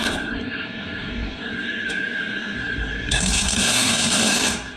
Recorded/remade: remade